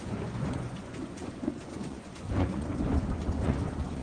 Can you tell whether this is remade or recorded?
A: remade